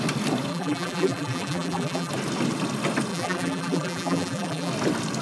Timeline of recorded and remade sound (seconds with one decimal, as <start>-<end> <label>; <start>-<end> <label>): 0.0-0.5 recorded; 0.5-2.1 remade; 2.1-3.1 recorded; 3.1-4.7 remade; 4.7-5.2 recorded